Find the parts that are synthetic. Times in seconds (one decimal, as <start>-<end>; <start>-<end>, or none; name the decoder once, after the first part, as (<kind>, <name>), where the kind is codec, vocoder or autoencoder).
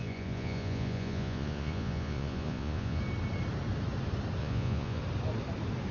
0.0-3.0 (vocoder, Vocos); 4.4-5.0